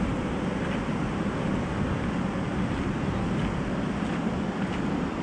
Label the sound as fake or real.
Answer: real